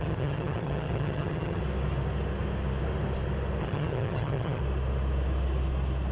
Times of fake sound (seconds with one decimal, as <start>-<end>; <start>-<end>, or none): 0.0-1.6; 3.6-4.6